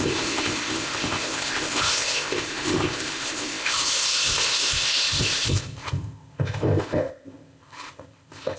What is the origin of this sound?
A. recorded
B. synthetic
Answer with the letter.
B